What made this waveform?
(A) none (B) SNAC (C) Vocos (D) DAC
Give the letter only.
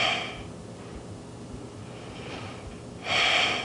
A